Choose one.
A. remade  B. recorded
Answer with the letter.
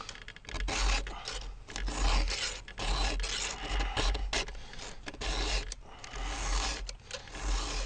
B